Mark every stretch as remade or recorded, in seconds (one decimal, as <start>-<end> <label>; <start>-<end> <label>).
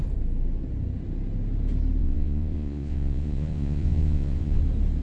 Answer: 0.0-2.0 recorded; 2.0-4.6 remade; 4.6-5.0 recorded